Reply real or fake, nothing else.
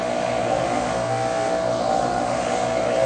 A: fake